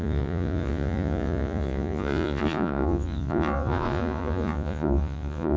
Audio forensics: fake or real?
fake